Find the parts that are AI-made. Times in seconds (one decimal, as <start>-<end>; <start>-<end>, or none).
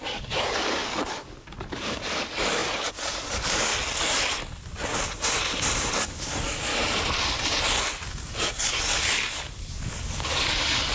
0.0-3.7; 5.9-6.7; 8.4-10.9